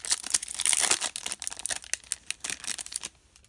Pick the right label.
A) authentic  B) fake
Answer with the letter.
A